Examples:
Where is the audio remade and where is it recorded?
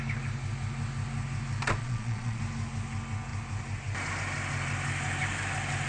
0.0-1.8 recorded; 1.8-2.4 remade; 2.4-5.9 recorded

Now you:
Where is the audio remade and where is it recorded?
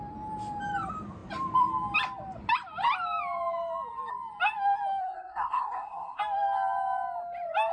0.0-5.0 recorded; 5.0-6.2 remade; 6.2-7.7 recorded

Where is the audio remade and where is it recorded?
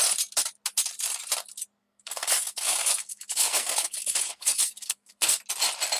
0.0-1.8 recorded; 1.8-5.4 remade; 5.4-6.0 recorded